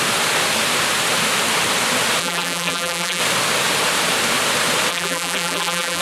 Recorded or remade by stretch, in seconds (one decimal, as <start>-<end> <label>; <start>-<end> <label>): 0.0-2.2 recorded; 2.2-3.2 remade; 3.2-4.9 recorded; 4.9-6.0 remade